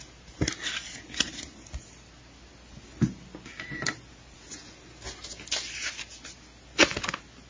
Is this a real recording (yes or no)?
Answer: yes